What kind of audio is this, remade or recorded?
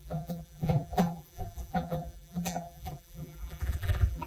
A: remade